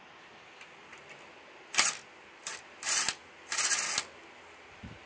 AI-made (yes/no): no